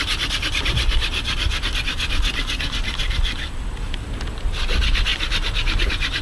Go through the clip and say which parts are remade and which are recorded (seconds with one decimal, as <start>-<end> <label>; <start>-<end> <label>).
0.0-6.2 recorded